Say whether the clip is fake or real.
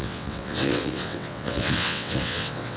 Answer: fake